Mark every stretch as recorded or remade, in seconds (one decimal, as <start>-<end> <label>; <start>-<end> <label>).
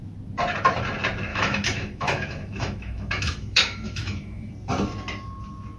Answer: 0.0-1.3 recorded; 1.3-4.5 remade; 4.5-5.8 recorded